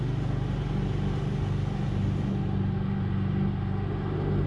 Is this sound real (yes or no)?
yes